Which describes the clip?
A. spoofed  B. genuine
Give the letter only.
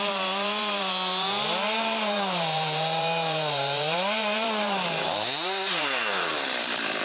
A